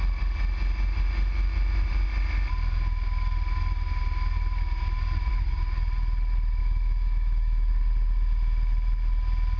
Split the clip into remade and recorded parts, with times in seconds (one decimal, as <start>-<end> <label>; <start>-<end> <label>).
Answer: 0.0-6.6 recorded; 6.6-7.7 remade; 7.7-9.6 recorded